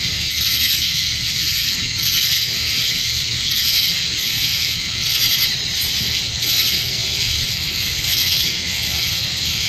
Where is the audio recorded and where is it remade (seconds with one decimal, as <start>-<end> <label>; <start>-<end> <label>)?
0.0-5.2 remade; 5.2-6.0 recorded; 6.0-9.7 remade